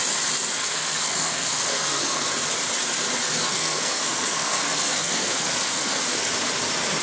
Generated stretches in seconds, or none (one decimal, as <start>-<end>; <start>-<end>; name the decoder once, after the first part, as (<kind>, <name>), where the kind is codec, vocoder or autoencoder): 0.6-2.3 (codec, SNAC); 3.5-6.0

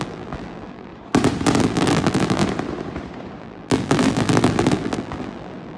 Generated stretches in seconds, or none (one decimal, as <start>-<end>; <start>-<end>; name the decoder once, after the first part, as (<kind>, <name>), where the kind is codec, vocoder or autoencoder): 0.0-0.9 (vocoder, BigVGAN v2); 1.6-2.4; 3.4-5.8

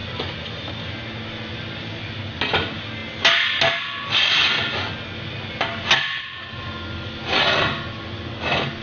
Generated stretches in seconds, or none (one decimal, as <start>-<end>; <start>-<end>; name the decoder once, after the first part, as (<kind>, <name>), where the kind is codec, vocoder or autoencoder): none

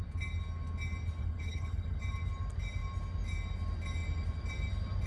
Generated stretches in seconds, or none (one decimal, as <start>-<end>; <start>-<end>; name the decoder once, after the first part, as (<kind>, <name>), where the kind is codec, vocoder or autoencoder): 1.2-2.0 (codec, HILCodec)